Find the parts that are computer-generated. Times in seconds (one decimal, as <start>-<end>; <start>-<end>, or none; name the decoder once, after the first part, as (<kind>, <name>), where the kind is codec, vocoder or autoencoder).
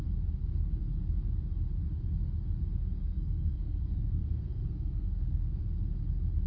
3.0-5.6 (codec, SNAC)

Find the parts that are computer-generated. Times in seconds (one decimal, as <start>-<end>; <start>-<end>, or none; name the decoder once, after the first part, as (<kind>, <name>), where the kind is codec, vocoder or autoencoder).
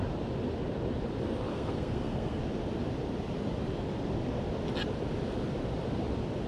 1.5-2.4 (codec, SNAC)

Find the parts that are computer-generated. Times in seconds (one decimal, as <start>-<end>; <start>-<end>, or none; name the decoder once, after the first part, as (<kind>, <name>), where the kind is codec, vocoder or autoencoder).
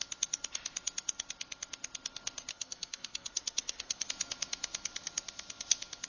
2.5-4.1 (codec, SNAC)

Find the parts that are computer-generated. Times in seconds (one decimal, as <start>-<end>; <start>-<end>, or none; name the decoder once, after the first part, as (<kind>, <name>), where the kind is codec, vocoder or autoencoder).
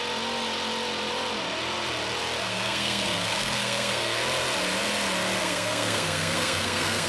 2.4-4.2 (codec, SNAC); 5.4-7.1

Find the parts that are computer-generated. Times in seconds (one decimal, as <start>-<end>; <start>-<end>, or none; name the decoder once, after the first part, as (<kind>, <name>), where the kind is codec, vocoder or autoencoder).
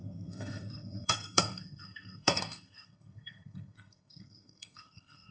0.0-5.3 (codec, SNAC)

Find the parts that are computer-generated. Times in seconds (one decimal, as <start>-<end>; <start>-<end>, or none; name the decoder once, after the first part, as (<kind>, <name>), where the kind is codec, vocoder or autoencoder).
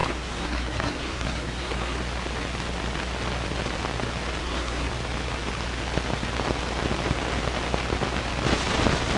0.0-2.0 (codec, SNAC); 4.4-4.9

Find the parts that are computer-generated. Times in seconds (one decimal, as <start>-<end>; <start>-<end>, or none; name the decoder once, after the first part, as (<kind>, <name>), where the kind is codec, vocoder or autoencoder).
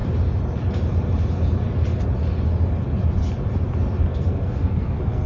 4.1-5.3 (codec, SNAC)